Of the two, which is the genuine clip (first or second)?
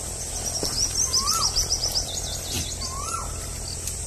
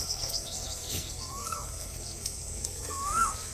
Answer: first